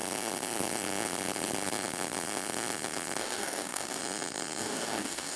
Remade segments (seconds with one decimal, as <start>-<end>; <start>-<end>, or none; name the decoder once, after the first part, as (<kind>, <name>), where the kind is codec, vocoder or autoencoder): 3.2-4.0 (codec, DAC); 4.6-5.4